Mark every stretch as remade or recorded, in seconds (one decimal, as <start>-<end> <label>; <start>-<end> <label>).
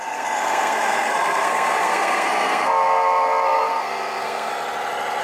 0.0-4.5 remade; 4.5-5.2 recorded